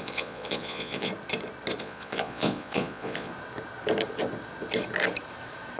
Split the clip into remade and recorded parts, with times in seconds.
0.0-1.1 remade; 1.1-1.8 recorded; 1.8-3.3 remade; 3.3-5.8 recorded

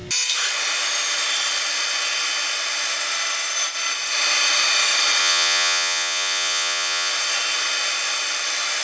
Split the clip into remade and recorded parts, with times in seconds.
0.0-5.2 recorded; 5.2-7.1 remade; 7.1-8.8 recorded

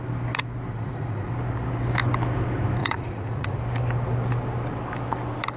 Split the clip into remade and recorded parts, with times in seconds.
0.0-0.7 recorded; 0.7-1.3 remade; 1.3-2.8 recorded; 2.8-3.6 remade; 3.6-5.6 recorded

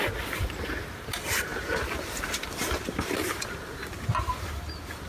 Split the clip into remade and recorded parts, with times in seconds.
0.0-5.1 recorded

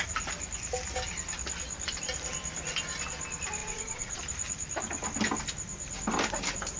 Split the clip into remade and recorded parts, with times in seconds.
0.0-3.6 recorded; 3.6-4.2 remade; 4.2-6.8 recorded